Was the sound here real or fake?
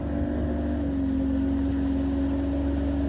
real